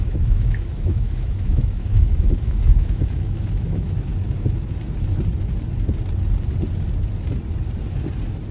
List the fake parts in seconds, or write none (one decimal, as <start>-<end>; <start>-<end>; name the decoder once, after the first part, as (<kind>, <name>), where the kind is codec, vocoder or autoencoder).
0.0-4.1 (autoencoder, DAC-VAE)

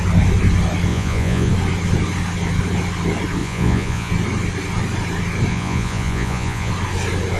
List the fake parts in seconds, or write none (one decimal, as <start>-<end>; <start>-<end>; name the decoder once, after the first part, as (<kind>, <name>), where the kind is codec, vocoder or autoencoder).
0.9-1.5 (vocoder, Vocos); 3.4-4.1; 5.5-6.7

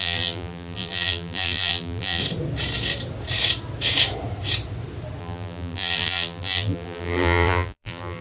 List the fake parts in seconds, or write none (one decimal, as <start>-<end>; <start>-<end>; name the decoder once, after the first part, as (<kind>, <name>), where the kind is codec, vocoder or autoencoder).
0.0-2.2 (vocoder, BigVGAN v2); 5.2-8.2

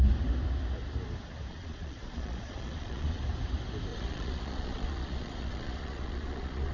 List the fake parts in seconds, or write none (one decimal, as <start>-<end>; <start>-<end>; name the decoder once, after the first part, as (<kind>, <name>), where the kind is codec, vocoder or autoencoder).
1.5-3.2 (vocoder, Vocos); 3.9-6.7

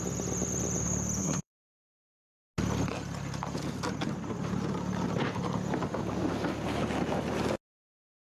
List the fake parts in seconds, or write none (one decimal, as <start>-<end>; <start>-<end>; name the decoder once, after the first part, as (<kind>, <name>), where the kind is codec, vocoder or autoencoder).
1.2-2.0 (codec, SNAC)